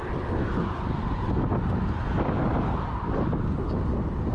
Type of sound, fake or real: real